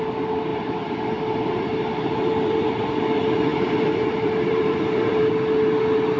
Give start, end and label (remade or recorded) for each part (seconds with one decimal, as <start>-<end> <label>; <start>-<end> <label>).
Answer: 0.0-0.5 recorded; 0.5-2.9 remade; 2.9-3.5 recorded; 3.5-5.3 remade; 5.3-6.2 recorded